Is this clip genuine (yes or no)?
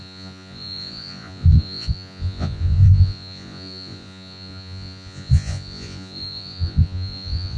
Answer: no